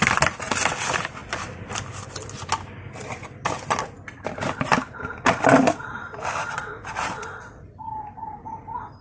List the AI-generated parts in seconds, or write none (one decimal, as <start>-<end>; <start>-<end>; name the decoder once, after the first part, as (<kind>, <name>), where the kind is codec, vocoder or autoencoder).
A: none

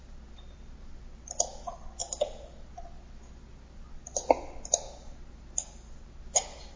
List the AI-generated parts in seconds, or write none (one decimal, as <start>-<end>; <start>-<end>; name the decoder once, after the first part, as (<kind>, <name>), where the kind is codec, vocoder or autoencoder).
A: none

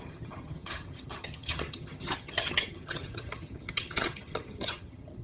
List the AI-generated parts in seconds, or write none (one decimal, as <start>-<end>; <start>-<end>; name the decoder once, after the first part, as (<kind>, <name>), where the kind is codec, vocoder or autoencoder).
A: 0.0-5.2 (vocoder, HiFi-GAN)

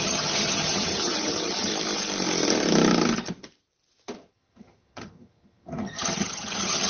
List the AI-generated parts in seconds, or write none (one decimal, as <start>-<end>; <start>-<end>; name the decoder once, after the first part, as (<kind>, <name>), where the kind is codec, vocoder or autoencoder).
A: 0.0-1.7 (vocoder, HiFi-GAN); 4.3-6.9